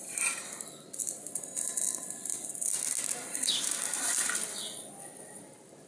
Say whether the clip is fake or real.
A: real